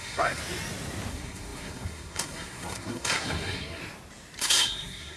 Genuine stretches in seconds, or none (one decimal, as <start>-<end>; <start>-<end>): 0.4-1.1; 3.8-4.4